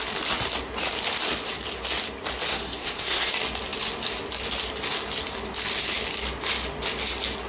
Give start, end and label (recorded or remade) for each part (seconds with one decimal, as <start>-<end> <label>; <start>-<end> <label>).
0.0-2.5 recorded; 2.5-3.3 remade; 3.3-7.5 recorded